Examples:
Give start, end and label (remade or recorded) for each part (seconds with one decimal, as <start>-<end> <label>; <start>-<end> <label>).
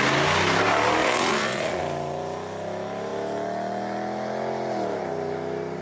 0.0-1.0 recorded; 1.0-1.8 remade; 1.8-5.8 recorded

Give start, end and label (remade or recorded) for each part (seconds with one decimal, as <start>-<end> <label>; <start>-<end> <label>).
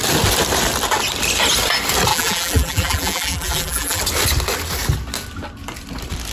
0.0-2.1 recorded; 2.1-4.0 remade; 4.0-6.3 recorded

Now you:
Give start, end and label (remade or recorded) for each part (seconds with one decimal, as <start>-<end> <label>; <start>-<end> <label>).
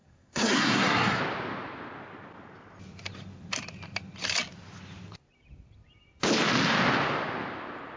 0.0-1.2 remade; 1.2-8.0 recorded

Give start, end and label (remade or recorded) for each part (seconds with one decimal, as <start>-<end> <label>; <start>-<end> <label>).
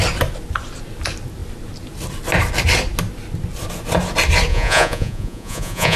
0.0-4.5 recorded; 4.5-6.0 remade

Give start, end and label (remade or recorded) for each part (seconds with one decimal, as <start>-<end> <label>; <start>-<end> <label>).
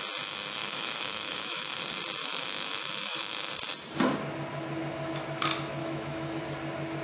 0.0-0.6 recorded; 0.6-1.8 remade; 1.8-2.2 recorded; 2.2-3.5 remade; 3.5-5.8 recorded; 5.8-6.4 remade; 6.4-7.0 recorded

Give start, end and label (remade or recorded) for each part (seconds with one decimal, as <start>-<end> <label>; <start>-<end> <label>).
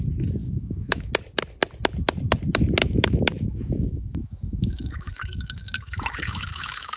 0.0-0.4 recorded; 0.4-1.1 remade; 1.1-2.8 recorded; 2.8-7.0 remade